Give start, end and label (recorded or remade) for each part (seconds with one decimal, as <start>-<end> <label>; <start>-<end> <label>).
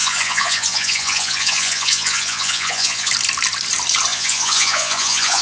0.0-3.1 remade; 3.1-4.1 recorded; 4.1-5.4 remade